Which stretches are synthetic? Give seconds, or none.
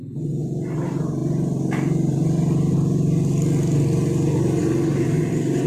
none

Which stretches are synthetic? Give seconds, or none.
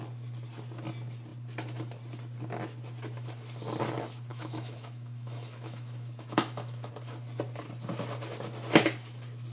4.3-6.9 (autoencoder, DAC-VAE)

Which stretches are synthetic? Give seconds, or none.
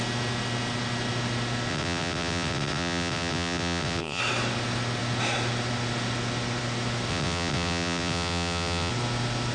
1.7-4.2 (vocoder, WaveNeXt); 7.1-8.9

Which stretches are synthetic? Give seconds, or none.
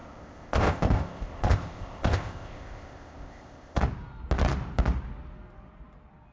0.0-3.8 (codec, ZipCodec)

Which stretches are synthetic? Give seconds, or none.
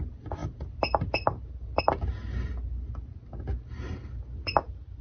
none